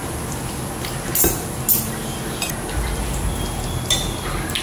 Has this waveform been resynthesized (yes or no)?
no